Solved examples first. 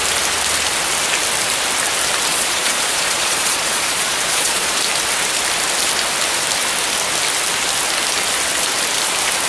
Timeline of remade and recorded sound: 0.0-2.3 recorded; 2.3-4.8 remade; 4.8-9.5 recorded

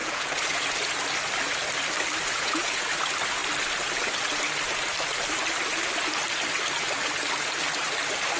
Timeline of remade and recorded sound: 0.0-0.7 remade; 0.7-2.2 recorded; 2.2-2.8 remade; 2.8-8.4 recorded